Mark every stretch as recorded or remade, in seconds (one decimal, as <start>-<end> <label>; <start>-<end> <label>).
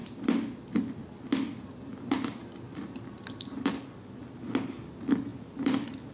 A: 0.0-2.4 recorded; 2.4-3.7 remade; 3.7-5.3 recorded; 5.3-6.1 remade